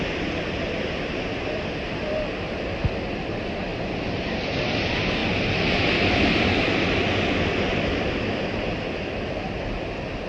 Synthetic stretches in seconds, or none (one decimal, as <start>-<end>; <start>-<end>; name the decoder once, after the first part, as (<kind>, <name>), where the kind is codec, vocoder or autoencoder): 0.0-3.7 (vocoder, BigVGAN v2); 4.6-5.2; 6.1-7.0; 7.7-10.3